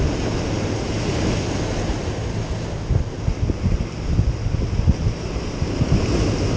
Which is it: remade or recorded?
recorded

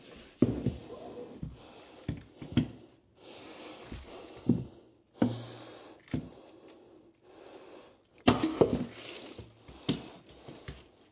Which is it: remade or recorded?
recorded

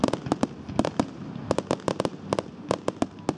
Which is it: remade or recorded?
recorded